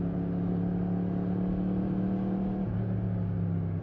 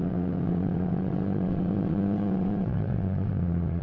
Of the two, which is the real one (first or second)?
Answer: first